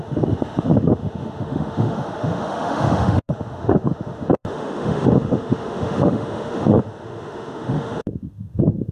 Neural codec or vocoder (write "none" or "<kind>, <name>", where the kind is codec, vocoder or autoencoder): autoencoder, DAC-VAE